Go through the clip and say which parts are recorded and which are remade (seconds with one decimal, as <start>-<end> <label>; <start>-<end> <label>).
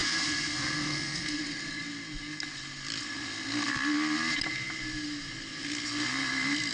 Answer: 0.0-1.4 remade; 1.4-6.7 recorded